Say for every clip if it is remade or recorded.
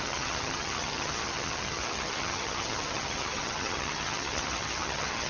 remade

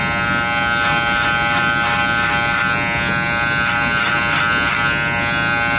recorded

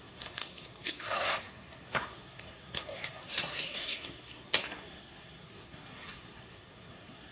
remade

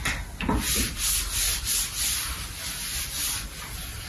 recorded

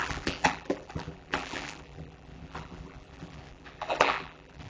remade